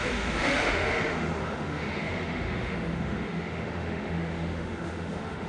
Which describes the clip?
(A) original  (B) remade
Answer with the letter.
B